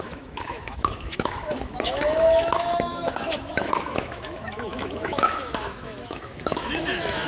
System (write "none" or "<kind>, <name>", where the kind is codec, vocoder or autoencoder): autoencoder, DAC-VAE